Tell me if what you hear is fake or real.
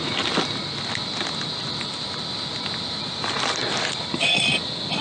real